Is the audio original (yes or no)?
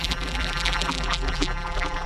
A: no